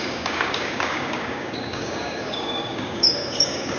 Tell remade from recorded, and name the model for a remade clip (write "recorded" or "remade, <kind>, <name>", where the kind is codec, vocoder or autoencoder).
remade, codec, DAC